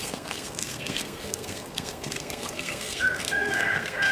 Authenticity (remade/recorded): remade